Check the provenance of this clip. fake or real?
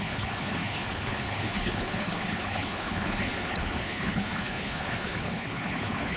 fake